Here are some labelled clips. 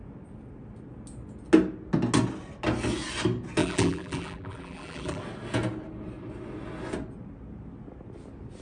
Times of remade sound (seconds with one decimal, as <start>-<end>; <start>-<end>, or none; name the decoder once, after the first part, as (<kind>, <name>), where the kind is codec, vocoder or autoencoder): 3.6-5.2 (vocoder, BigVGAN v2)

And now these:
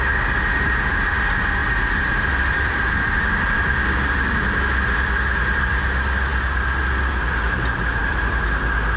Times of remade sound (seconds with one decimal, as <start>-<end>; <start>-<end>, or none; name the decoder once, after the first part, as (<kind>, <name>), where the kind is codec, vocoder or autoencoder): 1.6-3.9 (vocoder, BigVGAN v2); 8.0-9.0

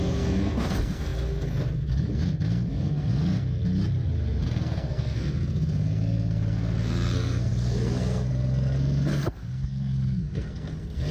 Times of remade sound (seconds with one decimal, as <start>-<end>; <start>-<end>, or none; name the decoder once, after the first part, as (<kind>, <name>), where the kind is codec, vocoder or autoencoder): 0.0-3.6 (codec, SNAC); 4.4-11.1

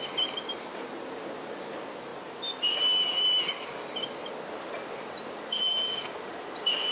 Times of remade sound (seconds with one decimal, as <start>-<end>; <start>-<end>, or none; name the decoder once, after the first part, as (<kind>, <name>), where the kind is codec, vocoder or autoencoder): none

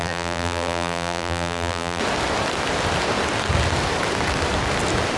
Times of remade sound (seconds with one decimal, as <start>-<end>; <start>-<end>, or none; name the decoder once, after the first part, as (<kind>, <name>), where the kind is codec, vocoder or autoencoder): 0.0-2.0 (vocoder, BigVGAN v2)

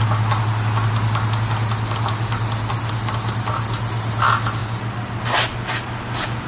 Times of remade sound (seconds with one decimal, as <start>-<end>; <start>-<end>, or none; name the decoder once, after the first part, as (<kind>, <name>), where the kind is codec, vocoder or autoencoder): none

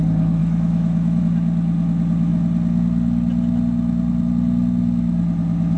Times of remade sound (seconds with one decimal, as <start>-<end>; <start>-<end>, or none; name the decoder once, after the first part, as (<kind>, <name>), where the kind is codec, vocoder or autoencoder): 0.4-1.2 (autoencoder, DAC-VAE)

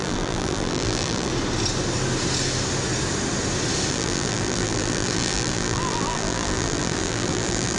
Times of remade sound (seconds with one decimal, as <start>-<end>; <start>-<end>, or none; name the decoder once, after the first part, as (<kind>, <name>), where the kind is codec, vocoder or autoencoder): 0.0-1.3 (vocoder, BigVGAN v2); 3.9-7.8